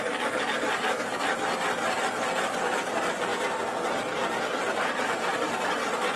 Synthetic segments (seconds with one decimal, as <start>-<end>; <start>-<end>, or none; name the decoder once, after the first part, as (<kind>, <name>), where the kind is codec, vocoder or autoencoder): none